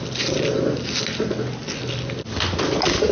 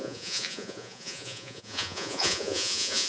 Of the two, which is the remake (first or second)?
second